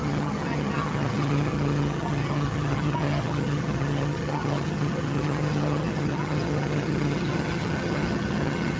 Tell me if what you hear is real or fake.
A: fake